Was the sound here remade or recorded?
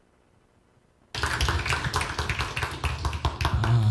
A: recorded